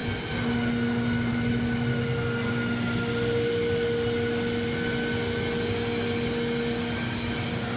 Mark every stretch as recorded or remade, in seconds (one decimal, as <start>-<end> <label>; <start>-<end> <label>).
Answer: 0.0-7.8 recorded